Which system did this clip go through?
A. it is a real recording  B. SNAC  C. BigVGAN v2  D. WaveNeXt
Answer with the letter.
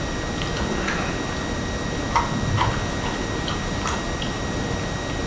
A